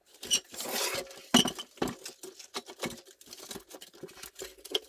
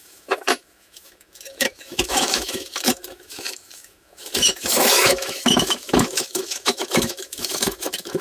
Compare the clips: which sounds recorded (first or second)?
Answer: first